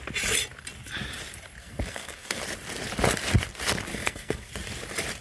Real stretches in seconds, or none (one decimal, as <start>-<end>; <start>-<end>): 0.0-1.6; 2.4-3.9; 4.5-5.2